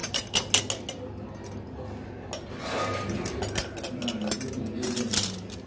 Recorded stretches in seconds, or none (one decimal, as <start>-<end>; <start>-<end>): 0.0-5.7